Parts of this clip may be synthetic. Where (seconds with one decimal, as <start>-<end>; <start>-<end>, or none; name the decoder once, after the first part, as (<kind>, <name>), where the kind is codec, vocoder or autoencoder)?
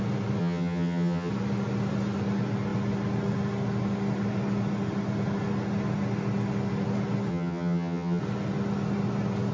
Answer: 0.4-1.3 (vocoder, HiFi-GAN); 7.3-8.2